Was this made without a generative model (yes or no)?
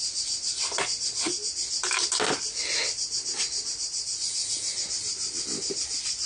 yes